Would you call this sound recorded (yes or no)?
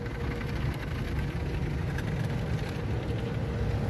yes